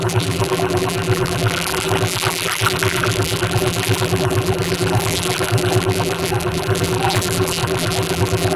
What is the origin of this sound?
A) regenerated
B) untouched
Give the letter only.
A